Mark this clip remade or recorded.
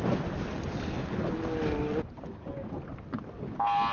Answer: recorded